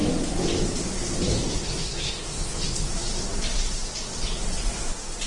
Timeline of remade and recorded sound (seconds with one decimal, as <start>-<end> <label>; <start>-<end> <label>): 0.0-1.3 recorded; 1.3-2.9 remade; 2.9-5.3 recorded